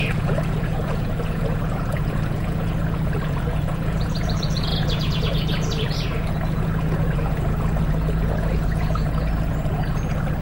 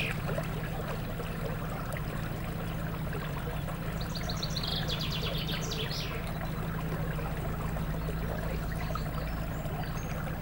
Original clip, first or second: second